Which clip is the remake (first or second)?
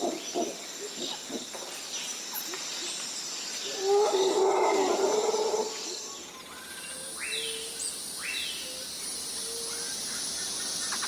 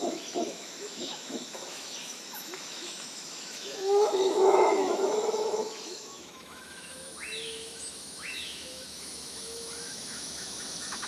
second